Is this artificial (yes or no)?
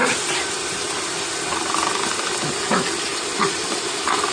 no